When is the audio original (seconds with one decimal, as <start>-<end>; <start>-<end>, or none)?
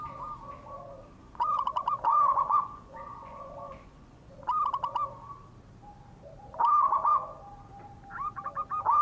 0.0-1.2; 4.3-9.0